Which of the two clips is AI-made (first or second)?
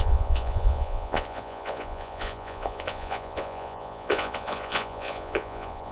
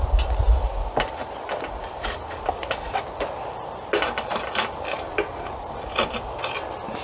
first